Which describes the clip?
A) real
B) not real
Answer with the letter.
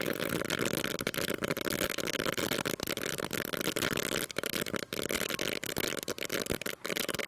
A